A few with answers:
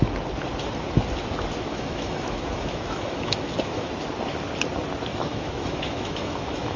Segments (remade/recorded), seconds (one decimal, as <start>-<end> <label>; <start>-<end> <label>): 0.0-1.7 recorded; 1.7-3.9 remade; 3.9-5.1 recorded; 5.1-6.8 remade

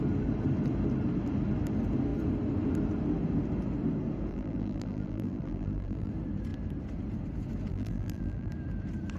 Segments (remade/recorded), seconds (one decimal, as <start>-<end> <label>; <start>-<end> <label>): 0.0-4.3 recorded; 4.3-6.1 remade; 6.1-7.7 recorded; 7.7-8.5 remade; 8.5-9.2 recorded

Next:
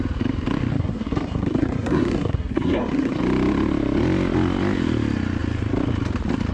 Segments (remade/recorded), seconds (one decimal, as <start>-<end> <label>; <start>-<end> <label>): 0.0-0.7 recorded; 0.7-3.2 remade; 3.2-6.5 recorded

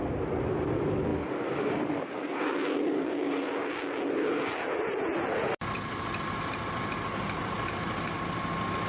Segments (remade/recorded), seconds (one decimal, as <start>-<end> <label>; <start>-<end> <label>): 0.0-8.9 recorded

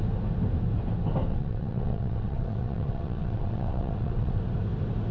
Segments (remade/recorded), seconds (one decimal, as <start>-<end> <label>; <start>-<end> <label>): 0.0-1.3 recorded; 1.3-4.4 remade; 4.4-5.1 recorded

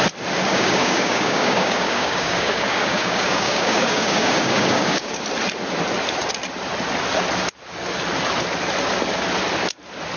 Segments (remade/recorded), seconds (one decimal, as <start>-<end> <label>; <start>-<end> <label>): 0.0-0.5 recorded; 0.5-5.2 remade; 5.2-10.2 recorded